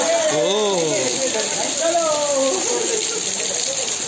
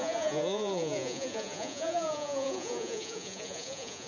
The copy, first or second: second